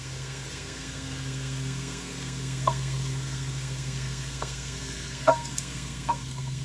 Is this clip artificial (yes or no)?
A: yes